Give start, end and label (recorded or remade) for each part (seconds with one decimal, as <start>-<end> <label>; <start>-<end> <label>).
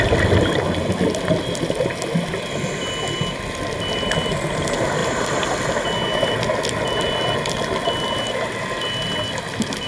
0.0-9.9 recorded